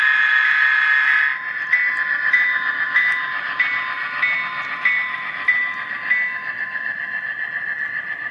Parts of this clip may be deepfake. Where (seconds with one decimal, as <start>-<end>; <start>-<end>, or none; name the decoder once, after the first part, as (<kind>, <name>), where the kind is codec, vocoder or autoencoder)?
none